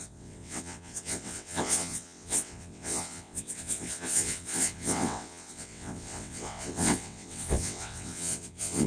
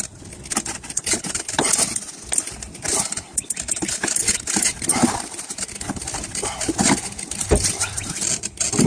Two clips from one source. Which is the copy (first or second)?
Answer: first